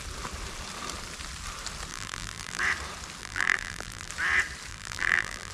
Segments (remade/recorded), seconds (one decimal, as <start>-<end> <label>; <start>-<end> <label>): 0.0-1.9 recorded; 1.9-2.6 remade; 2.6-3.2 recorded; 3.2-4.1 remade; 4.1-4.7 recorded; 4.7-5.5 remade